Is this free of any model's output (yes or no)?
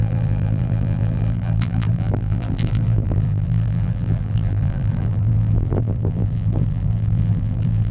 no